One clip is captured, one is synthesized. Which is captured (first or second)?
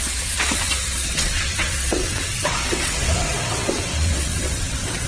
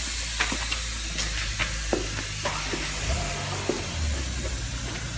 second